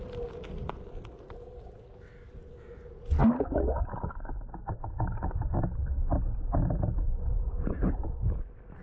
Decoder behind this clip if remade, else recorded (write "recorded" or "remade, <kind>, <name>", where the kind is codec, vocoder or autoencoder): recorded